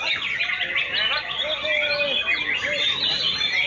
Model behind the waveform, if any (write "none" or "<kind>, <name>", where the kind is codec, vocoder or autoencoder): none